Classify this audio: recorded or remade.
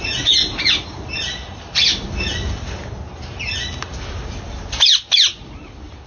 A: recorded